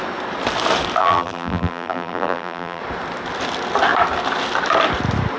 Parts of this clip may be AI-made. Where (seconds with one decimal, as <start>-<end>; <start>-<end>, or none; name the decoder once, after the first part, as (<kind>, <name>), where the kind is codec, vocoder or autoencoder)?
1.0-2.8 (vocoder, BigVGAN v2)